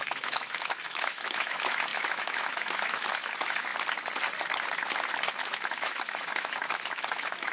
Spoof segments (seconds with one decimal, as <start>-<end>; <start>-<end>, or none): 0.0-3.7; 5.3-7.5